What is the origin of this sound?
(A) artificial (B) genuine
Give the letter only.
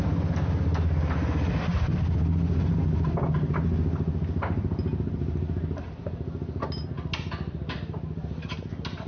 B